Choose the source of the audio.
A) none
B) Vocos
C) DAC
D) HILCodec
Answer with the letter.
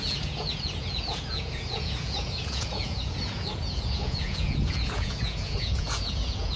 B